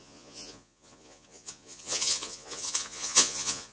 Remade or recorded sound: remade